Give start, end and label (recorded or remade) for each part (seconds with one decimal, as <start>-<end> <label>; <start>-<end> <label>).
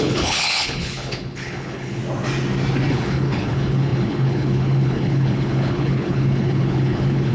0.0-2.0 remade; 2.0-2.9 recorded; 2.9-7.3 remade